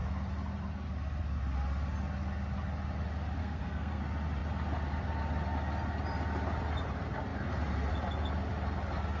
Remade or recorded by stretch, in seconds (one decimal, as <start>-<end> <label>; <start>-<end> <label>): 0.0-3.4 recorded; 3.4-4.0 remade; 4.0-9.2 recorded